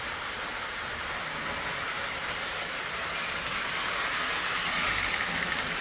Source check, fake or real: real